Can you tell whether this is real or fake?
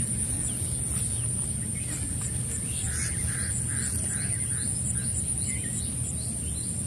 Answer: real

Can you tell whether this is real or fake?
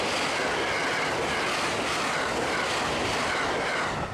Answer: real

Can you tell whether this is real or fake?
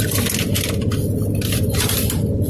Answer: real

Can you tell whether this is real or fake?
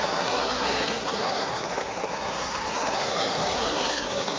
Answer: fake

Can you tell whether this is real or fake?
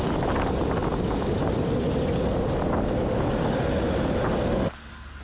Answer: real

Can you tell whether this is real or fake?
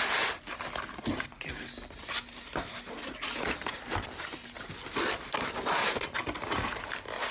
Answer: real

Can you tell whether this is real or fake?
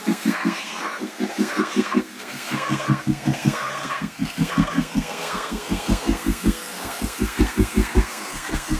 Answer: fake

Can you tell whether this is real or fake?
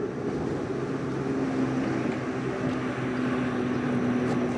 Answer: real